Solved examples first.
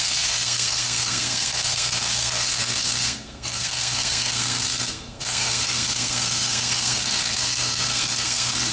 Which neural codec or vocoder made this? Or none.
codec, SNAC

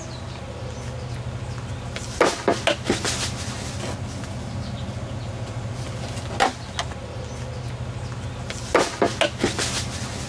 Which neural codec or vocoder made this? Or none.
none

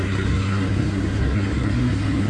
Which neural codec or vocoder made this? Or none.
codec, SNAC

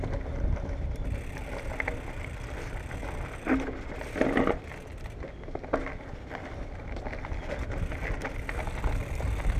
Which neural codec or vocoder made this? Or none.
none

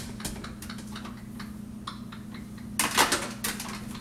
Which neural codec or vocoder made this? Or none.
none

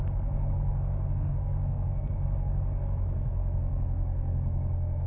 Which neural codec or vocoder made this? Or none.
codec, SNAC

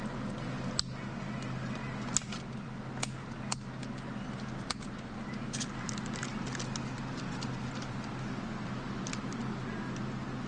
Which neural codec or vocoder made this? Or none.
none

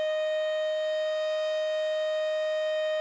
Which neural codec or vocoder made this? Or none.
none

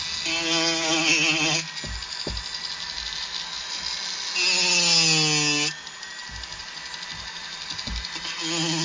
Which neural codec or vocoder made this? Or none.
none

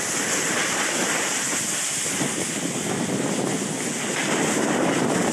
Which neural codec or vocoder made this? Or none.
none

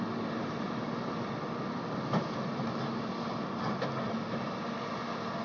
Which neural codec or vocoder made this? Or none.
none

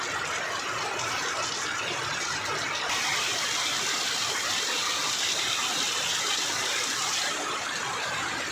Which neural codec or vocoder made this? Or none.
none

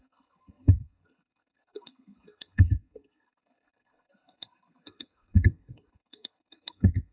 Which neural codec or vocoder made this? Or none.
codec, SNAC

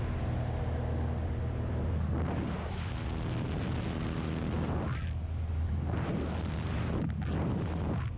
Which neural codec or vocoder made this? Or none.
none